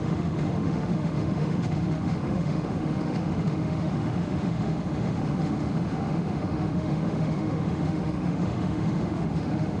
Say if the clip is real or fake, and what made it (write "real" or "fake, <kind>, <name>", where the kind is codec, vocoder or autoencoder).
fake, autoencoder, DAC-VAE